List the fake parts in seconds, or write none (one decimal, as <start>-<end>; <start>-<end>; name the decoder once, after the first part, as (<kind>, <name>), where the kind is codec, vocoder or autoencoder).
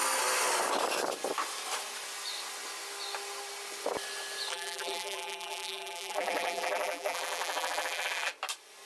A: 4.5-8.3 (vocoder, BigVGAN v2)